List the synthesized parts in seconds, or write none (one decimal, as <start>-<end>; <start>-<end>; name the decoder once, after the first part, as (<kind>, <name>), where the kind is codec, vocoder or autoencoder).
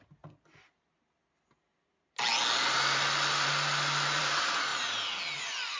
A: none